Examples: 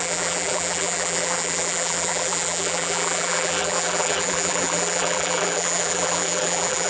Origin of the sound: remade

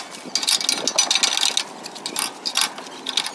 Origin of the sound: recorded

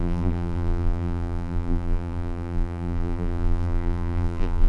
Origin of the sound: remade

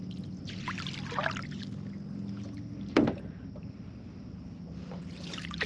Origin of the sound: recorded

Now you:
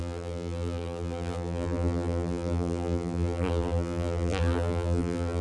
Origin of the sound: remade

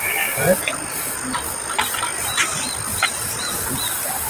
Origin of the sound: recorded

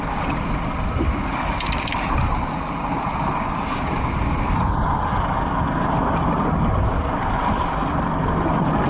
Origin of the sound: recorded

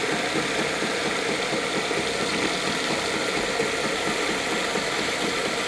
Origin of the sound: remade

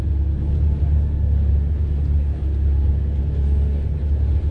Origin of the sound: recorded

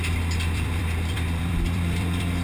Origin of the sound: remade